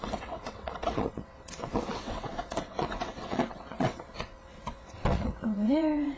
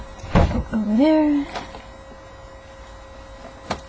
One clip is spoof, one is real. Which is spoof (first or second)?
first